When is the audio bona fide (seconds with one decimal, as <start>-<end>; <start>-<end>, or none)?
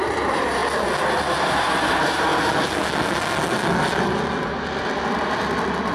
0.6-1.5; 2.3-5.9